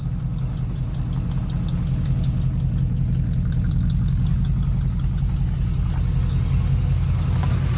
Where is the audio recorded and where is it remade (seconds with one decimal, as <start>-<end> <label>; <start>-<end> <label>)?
0.0-7.8 recorded